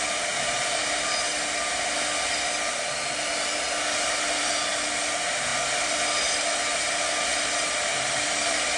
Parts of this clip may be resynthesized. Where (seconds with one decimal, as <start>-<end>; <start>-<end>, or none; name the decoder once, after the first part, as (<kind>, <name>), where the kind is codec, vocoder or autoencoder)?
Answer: none